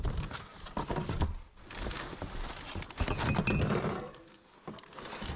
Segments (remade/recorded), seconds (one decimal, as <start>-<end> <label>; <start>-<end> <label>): 0.0-5.4 recorded